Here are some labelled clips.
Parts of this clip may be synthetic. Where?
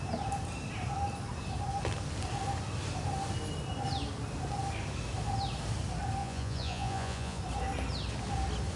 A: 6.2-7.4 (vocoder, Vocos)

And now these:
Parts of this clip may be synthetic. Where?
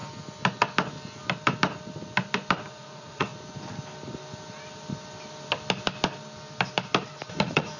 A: 2.7-3.3 (vocoder, Vocos); 7.3-7.8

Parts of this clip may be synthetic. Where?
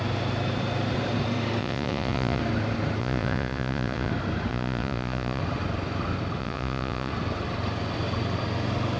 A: 1.6-2.4 (vocoder, Vocos); 3.0-4.1; 4.5-5.4; 6.4-7.1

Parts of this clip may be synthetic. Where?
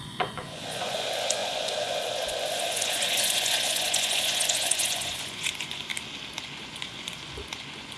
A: 0.0-5.9 (vocoder, Vocos); 6.4-8.0